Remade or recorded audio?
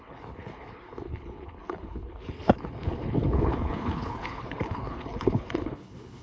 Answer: remade